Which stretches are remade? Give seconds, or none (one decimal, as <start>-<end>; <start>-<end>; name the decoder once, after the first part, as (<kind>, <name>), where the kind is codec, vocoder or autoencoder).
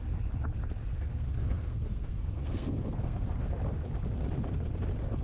0.8-3.5 (codec, SNAC)